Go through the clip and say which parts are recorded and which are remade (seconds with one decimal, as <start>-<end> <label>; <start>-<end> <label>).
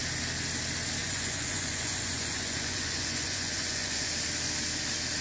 0.0-1.0 recorded; 1.0-4.1 remade; 4.1-5.2 recorded